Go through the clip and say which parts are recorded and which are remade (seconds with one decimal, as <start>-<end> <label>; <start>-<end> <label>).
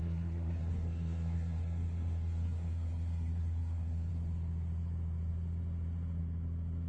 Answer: 0.0-4.1 remade; 4.1-6.9 recorded